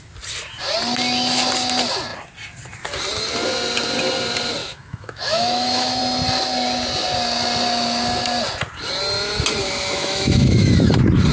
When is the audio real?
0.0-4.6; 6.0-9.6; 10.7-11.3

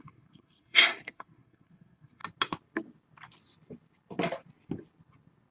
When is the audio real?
2.2-5.5